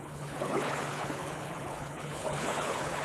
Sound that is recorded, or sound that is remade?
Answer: remade